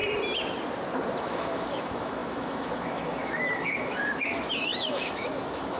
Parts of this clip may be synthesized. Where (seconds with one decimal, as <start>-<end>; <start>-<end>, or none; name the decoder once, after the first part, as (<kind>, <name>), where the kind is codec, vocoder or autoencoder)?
1.2-5.8 (autoencoder, DAC-VAE)